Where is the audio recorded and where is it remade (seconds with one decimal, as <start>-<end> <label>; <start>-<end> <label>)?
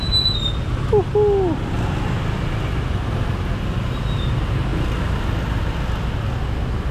0.0-6.9 recorded